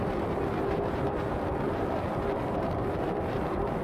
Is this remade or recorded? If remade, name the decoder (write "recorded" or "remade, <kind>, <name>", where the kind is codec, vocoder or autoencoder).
remade, vocoder, BigVGAN v2